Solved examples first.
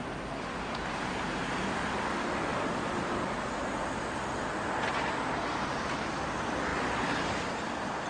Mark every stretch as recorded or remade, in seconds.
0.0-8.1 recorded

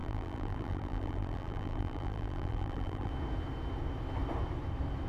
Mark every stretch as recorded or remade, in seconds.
0.0-3.1 remade; 3.1-5.1 recorded

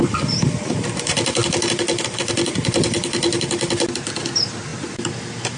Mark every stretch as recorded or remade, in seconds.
0.0-5.6 recorded

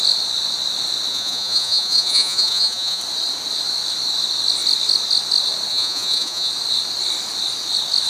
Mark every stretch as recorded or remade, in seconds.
0.0-1.1 recorded; 1.1-3.0 remade; 3.0-5.7 recorded; 5.7-6.5 remade; 6.5-8.1 recorded

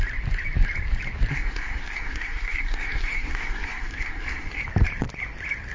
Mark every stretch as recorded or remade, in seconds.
0.0-1.3 recorded; 1.3-4.6 remade; 4.6-5.7 recorded

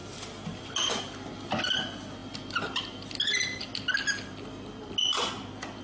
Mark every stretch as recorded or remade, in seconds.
0.0-5.8 recorded